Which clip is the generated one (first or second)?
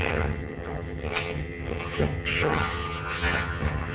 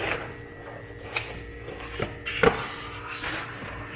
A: first